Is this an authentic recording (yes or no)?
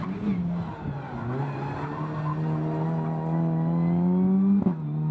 yes